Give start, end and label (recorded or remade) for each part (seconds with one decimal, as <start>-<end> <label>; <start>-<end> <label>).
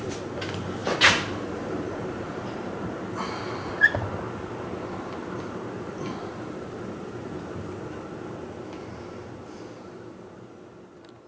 0.0-0.8 recorded; 0.8-2.7 remade; 2.7-11.3 recorded